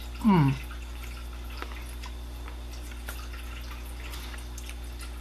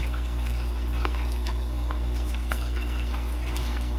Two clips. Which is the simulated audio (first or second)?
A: second